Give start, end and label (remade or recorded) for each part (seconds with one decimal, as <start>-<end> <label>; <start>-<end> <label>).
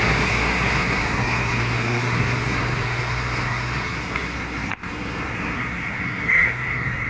0.0-7.1 remade